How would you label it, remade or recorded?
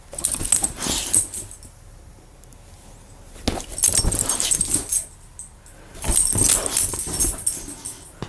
recorded